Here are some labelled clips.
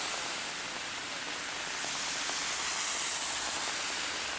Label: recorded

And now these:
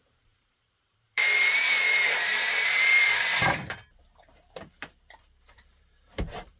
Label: remade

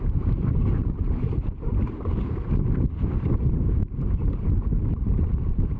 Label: remade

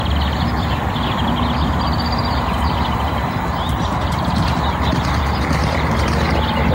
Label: recorded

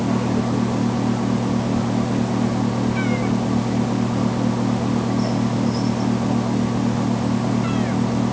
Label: recorded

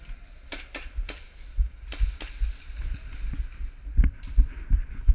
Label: recorded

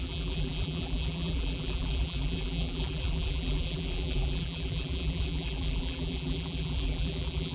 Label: remade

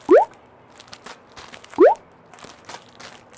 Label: recorded